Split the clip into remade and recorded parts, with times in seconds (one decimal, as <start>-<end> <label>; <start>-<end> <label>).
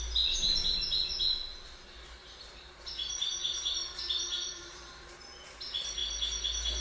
0.0-2.2 recorded; 2.2-2.9 remade; 2.9-3.4 recorded; 3.4-5.1 remade; 5.1-6.8 recorded